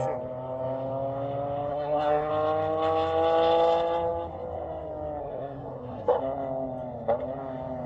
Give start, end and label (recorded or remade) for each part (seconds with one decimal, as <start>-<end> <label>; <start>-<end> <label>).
0.0-1.7 recorded; 1.7-2.3 remade; 2.3-5.2 recorded; 5.2-6.2 remade; 6.2-7.9 recorded